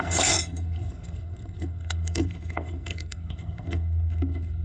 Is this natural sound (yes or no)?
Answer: no